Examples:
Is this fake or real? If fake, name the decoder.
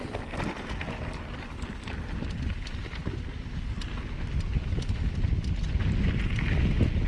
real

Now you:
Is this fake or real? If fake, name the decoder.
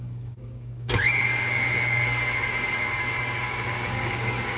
fake, codec, DAC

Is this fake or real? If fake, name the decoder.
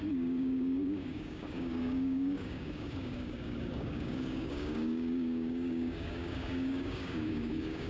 fake, codec, DAC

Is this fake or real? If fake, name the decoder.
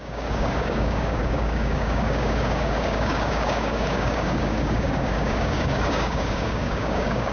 fake, codec, DAC